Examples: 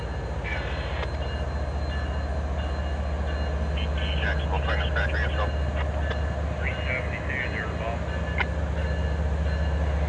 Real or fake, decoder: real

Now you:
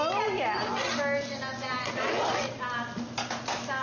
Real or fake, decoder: real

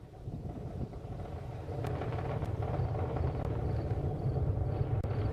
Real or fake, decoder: fake, vocoder, BigVGAN v2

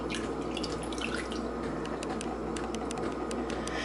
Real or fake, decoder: real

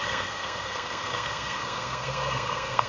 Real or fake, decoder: fake, codec, SNAC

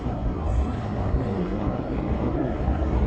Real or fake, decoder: fake, codec, SNAC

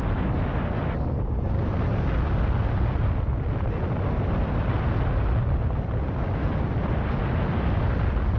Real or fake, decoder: real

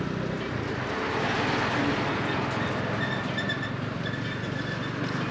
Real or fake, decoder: real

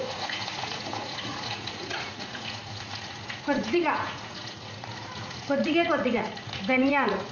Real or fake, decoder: fake, vocoder, Vocos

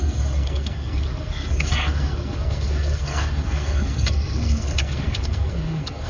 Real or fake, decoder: fake, codec, SNAC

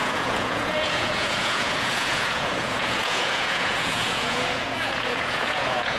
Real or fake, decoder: fake, vocoder, Vocos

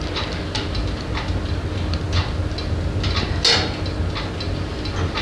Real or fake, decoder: real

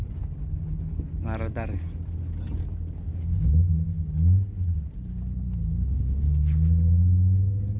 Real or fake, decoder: real